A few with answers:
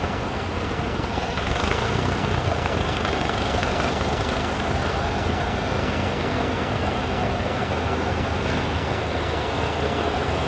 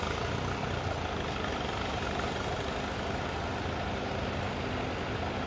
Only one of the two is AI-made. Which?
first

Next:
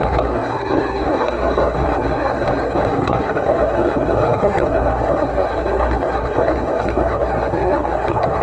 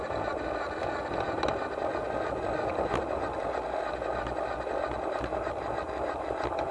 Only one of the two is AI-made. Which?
first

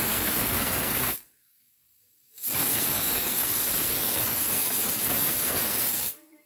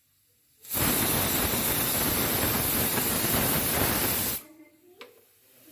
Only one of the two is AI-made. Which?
first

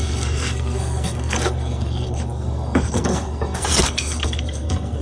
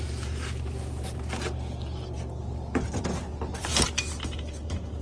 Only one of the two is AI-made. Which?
first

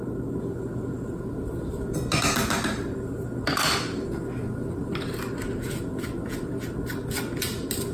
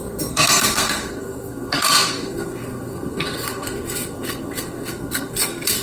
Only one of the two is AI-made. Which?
second